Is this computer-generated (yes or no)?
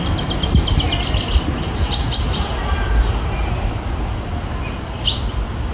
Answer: no